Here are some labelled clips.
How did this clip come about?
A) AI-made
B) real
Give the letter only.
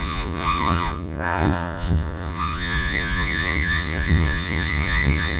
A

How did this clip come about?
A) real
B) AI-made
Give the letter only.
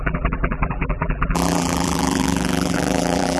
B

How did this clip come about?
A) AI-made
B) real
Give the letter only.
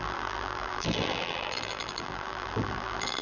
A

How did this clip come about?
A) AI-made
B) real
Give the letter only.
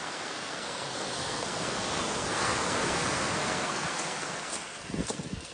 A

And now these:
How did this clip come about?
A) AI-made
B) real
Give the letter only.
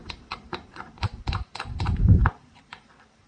A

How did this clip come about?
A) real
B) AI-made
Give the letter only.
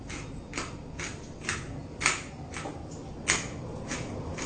A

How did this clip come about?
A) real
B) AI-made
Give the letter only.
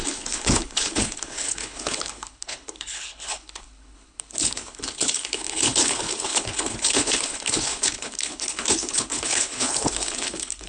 B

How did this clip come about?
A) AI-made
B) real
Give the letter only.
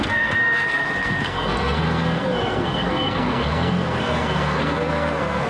A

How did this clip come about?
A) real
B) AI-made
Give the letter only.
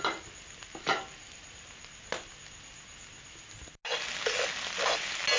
A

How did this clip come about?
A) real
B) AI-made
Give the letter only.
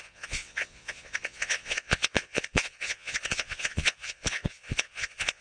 B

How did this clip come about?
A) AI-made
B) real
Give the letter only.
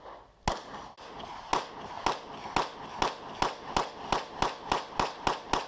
B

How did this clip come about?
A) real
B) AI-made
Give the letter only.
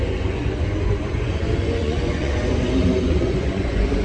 B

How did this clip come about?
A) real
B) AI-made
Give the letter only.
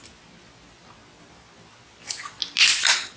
A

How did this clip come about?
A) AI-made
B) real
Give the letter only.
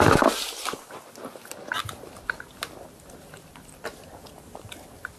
B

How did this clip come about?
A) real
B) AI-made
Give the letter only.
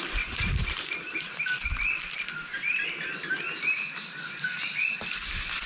B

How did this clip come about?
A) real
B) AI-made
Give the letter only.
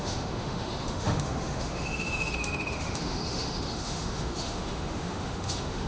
B